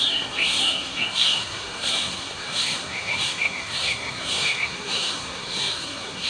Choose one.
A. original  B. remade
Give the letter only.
B